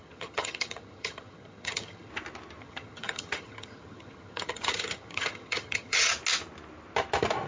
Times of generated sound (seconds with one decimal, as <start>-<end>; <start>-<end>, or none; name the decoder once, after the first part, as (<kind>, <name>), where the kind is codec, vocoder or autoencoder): 0.0-2.1 (vocoder, HiFi-GAN); 2.6-6.1